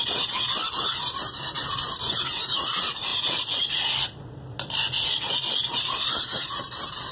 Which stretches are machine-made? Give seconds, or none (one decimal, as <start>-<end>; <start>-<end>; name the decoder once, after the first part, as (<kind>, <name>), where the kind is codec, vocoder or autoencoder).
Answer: none